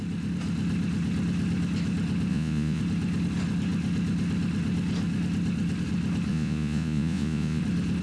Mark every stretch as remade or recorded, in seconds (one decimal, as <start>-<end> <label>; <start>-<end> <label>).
0.0-2.3 recorded; 2.3-2.8 remade; 2.8-6.3 recorded; 6.3-7.6 remade; 7.6-8.0 recorded